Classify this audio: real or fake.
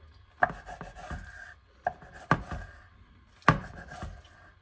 real